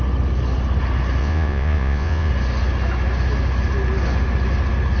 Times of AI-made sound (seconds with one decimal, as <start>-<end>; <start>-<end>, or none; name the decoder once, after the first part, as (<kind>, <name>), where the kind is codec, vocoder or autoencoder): 1.2-2.3 (vocoder, Vocos)